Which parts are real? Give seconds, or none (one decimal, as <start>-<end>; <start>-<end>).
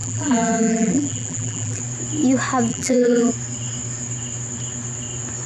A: 1.8-2.7; 3.3-5.5